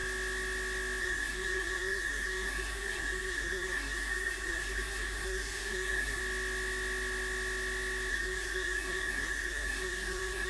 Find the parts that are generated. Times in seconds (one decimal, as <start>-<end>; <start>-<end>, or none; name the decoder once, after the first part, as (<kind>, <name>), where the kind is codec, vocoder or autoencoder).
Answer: 1.0-6.2 (codec, SNAC); 8.1-10.5